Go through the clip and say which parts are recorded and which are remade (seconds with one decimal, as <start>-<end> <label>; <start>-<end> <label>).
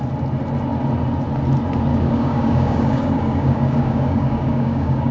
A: 0.0-1.9 recorded; 1.9-5.1 remade